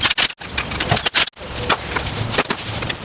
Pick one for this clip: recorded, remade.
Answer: recorded